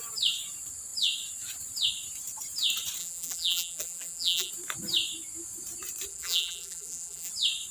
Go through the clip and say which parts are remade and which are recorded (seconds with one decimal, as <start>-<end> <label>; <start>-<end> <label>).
0.0-3.0 recorded; 3.0-4.5 remade; 4.5-6.1 recorded; 6.1-7.3 remade; 7.3-7.7 recorded